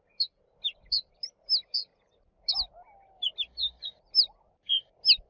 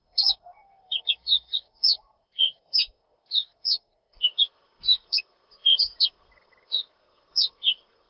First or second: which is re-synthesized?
second